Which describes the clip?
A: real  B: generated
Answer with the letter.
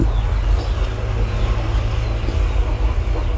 A